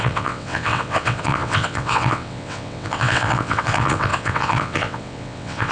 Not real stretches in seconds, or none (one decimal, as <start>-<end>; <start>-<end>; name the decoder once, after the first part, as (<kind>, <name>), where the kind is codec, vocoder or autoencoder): 0.0-5.7 (vocoder, WaveNeXt)